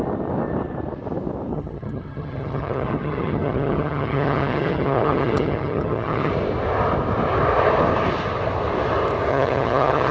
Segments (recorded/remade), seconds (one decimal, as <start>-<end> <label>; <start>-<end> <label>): 0.0-1.5 recorded; 1.5-6.3 remade; 6.3-9.3 recorded; 9.3-10.1 remade